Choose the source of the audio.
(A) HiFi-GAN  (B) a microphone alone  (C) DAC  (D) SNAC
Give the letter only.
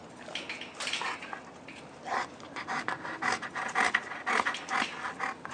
B